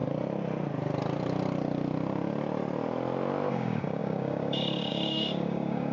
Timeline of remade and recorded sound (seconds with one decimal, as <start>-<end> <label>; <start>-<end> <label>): 0.0-3.5 recorded; 3.5-5.9 remade

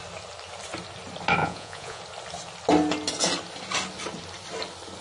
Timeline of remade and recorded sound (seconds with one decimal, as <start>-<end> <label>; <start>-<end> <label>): 0.0-1.4 recorded; 1.4-2.0 remade; 2.0-5.0 recorded

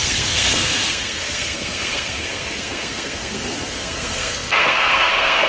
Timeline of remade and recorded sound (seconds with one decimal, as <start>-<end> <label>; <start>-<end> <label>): 0.0-5.5 remade

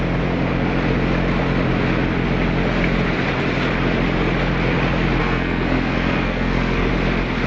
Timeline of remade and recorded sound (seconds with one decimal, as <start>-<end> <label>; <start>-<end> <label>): 0.0-5.2 recorded; 5.2-6.9 remade; 6.9-7.5 recorded

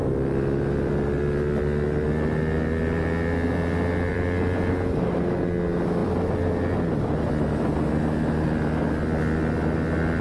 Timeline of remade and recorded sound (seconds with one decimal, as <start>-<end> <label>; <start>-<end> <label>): 0.0-4.1 recorded; 4.1-5.1 remade; 5.1-10.2 recorded

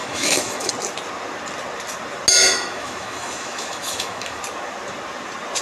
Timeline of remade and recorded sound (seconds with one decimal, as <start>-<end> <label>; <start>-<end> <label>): 0.0-0.7 remade; 0.7-2.4 recorded; 2.4-4.4 remade; 4.4-5.6 recorded

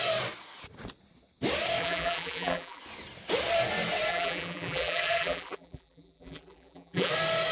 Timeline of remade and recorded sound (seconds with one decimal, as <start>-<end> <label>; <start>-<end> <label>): 0.0-1.8 recorded; 1.8-2.8 remade; 2.8-4.1 recorded; 4.1-7.1 remade; 7.1-7.5 recorded

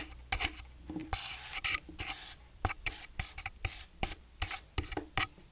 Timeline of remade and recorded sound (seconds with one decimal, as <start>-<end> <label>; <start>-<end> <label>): 0.0-1.0 recorded; 1.0-4.2 remade; 4.2-5.5 recorded